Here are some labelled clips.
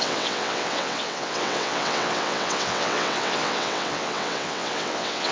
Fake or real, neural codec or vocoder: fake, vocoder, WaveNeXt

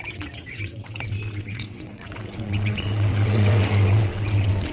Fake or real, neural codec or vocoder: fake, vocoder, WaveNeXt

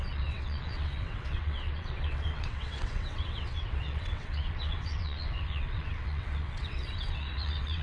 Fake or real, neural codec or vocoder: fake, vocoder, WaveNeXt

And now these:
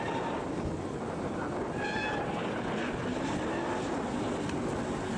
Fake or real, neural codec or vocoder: real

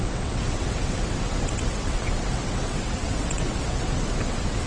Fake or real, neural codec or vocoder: fake, vocoder, WaveNeXt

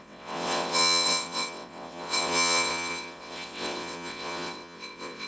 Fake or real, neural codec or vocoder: fake, vocoder, WaveNeXt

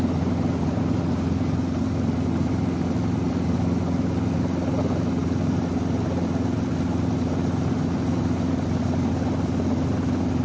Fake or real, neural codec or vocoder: real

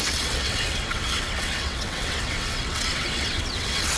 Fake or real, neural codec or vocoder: fake, vocoder, WaveNeXt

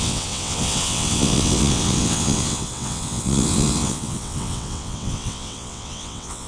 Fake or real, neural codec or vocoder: fake, vocoder, WaveNeXt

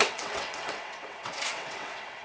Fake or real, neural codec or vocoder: fake, vocoder, WaveNeXt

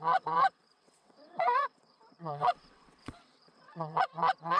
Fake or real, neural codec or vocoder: fake, vocoder, WaveNeXt